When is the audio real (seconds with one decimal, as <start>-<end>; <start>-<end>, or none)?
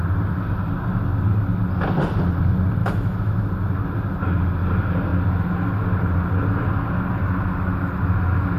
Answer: 0.0-2.8; 3.5-8.6